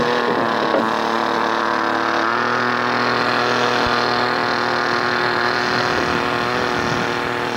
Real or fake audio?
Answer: real